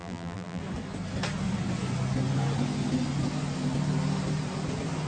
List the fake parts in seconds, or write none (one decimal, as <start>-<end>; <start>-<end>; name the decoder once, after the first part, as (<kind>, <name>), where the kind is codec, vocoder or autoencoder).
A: 0.0-0.6 (vocoder, BigVGAN v2)